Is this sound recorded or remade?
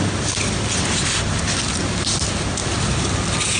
recorded